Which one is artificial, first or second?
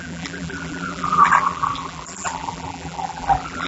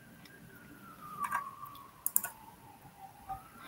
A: first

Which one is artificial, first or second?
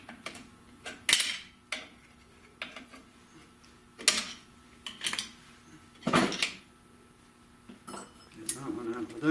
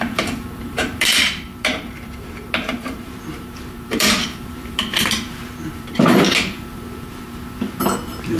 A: second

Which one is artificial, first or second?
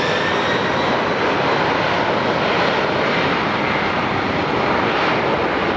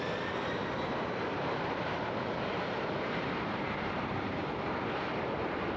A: second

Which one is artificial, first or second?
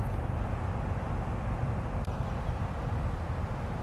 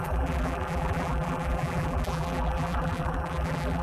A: second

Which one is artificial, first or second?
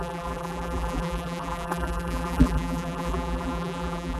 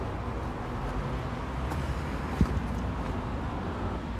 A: first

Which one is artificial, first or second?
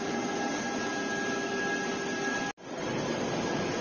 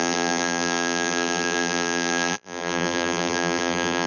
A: second